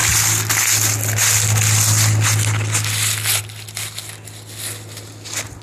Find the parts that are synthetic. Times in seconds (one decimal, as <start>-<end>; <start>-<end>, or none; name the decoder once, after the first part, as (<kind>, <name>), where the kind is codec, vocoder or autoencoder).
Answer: none